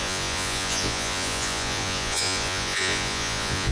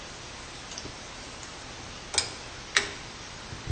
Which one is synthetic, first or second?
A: first